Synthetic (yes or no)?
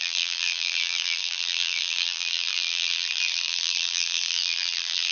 yes